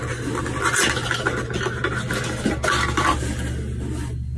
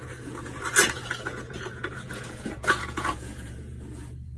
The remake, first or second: second